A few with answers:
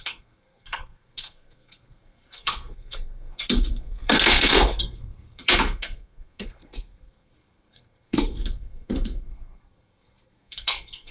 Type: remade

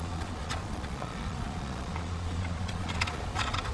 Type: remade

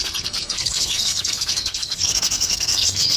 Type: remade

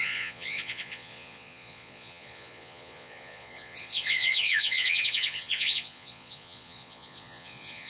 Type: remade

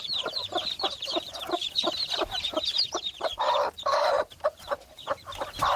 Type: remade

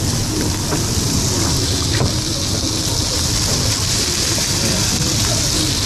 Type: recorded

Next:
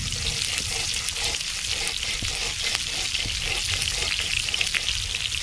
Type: recorded